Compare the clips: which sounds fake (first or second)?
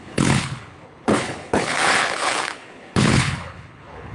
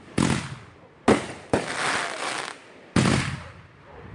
first